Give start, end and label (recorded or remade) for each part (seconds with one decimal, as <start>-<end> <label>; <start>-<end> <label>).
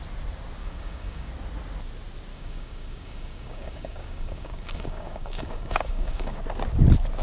0.0-0.6 recorded; 0.6-1.3 remade; 1.3-2.3 recorded; 2.3-6.4 remade; 6.4-7.2 recorded